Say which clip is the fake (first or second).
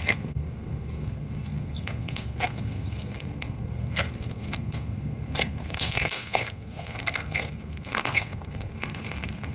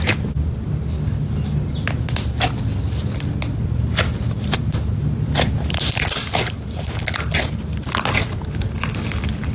first